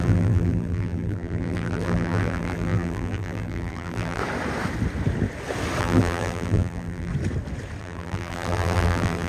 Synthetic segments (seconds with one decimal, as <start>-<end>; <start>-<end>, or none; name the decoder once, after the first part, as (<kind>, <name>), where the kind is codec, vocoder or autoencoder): 0.0-4.2 (vocoder, BigVGAN v2); 5.8-7.1; 7.8-9.3